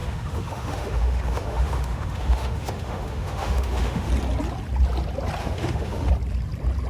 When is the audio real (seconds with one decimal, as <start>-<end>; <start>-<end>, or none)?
4.1-5.4; 6.1-6.9